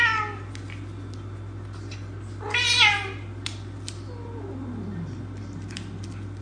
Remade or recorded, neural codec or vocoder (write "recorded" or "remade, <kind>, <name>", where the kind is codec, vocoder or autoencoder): recorded